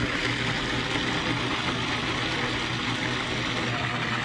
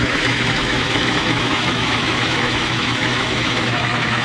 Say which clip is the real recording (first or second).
first